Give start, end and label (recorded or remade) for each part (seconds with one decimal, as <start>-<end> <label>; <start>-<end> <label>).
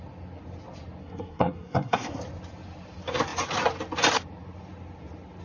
0.0-1.0 recorded; 1.0-2.2 remade; 2.2-5.4 recorded